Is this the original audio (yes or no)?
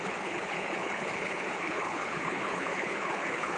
no